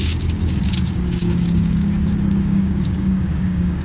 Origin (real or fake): fake